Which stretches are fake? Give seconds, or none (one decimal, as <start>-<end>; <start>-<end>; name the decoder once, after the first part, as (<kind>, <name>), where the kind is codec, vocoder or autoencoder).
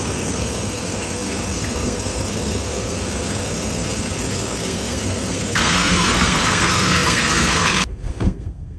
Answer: 0.0-8.8 (codec, SNAC)